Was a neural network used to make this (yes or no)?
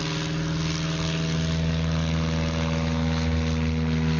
no